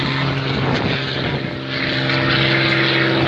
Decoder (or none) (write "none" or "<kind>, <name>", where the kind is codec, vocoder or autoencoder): none